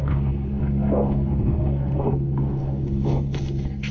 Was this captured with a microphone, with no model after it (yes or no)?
no